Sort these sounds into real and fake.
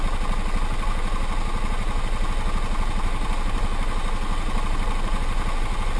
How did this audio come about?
real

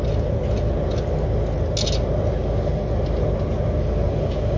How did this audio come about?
real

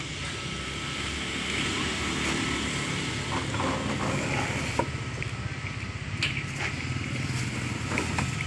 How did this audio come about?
real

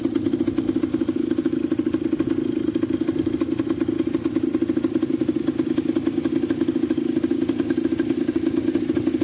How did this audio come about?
real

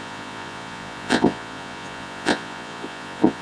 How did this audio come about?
fake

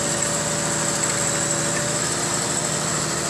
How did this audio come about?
real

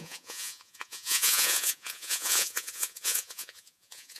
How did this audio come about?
fake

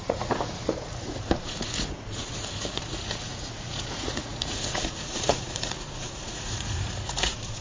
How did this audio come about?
fake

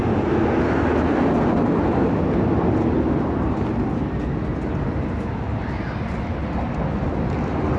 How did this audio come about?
real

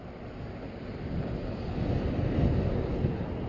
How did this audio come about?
real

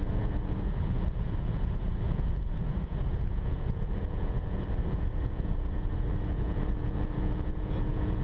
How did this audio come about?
fake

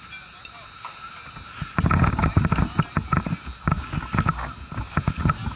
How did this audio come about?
real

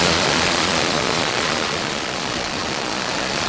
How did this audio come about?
fake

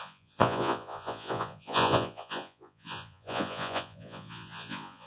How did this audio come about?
fake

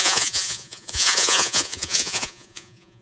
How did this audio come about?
fake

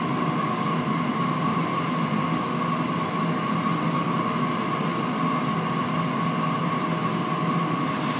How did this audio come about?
real